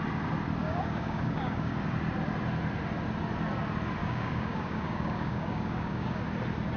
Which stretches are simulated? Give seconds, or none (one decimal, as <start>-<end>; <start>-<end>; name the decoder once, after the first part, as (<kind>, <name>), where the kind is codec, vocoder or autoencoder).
0.6-1.7 (codec, DAC); 4.0-6.2